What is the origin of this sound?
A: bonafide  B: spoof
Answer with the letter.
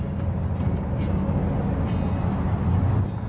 A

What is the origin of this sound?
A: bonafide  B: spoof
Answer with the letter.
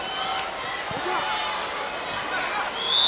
A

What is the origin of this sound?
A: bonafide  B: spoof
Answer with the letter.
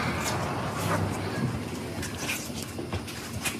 A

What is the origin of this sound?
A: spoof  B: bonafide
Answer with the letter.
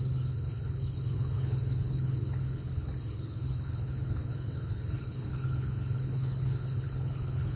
A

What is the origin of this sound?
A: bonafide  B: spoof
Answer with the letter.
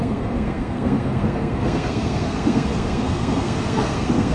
B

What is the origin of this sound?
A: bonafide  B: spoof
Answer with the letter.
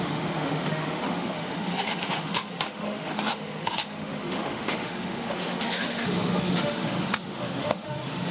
B